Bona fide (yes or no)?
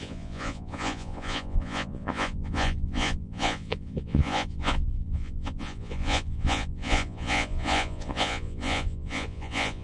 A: no